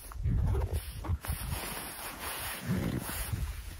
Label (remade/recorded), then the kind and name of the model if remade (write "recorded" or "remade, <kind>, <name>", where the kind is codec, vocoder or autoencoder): remade, vocoder, Vocos